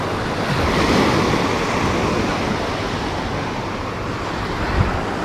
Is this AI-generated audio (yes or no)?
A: no